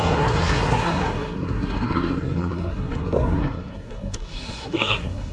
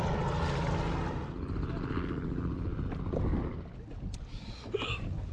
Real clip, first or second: second